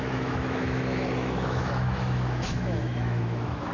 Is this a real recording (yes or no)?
no